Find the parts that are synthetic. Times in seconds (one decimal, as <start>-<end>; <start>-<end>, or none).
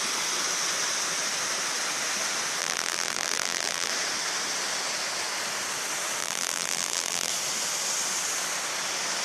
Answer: 2.6-3.9; 6.2-7.3